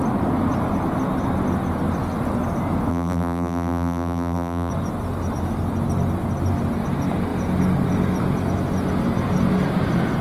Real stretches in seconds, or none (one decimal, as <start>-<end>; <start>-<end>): 0.0-2.9; 4.7-10.2